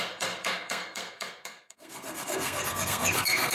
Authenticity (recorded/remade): remade